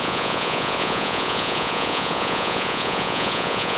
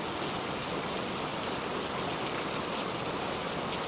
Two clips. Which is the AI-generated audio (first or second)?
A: first